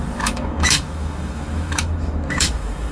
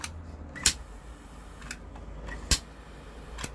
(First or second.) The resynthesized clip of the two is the first